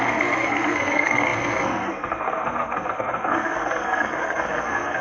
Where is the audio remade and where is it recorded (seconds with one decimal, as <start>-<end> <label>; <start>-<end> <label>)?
0.0-5.0 remade